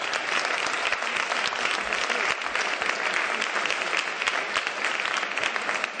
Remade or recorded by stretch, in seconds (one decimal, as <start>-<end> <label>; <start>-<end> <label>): 0.0-6.0 recorded

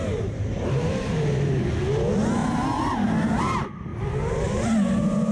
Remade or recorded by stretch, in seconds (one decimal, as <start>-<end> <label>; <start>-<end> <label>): 0.0-1.6 remade; 1.6-2.4 recorded; 2.4-3.4 remade; 3.4-3.9 recorded; 3.9-4.5 remade; 4.5-5.3 recorded